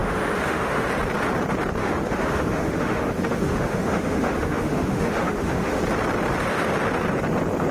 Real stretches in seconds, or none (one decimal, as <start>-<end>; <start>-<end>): 0.9-1.8; 5.8-7.7